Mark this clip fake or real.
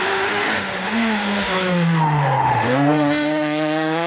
fake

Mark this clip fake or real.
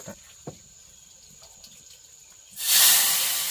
real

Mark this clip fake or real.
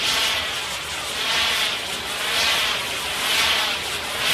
real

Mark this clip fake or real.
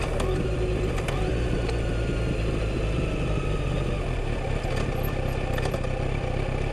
real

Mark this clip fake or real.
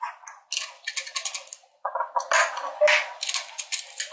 real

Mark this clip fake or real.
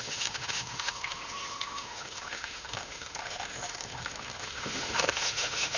fake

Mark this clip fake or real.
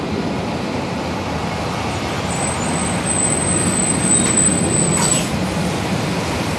real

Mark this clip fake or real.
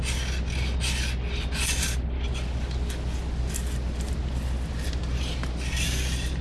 real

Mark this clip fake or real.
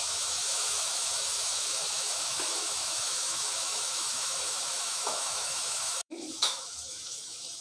fake